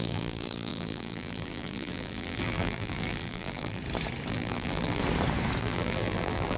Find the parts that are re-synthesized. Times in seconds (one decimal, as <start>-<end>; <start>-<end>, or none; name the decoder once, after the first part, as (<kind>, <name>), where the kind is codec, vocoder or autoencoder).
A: 0.0-3.8 (vocoder, BigVGAN v2); 4.3-5.0; 5.6-6.6